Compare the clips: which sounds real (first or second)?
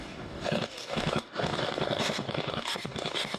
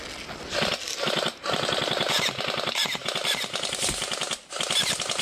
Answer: second